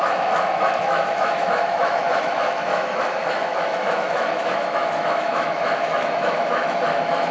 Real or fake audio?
fake